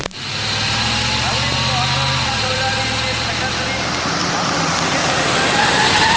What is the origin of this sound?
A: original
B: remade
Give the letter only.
A